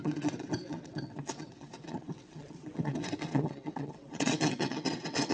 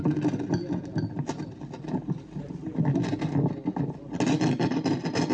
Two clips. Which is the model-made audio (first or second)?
first